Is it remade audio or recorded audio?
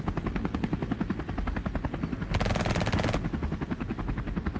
recorded